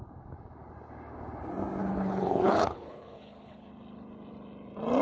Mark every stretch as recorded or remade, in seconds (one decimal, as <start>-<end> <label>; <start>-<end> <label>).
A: 0.0-1.8 recorded; 1.8-3.7 remade; 3.7-5.0 recorded